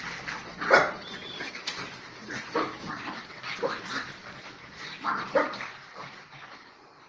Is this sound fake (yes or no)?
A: no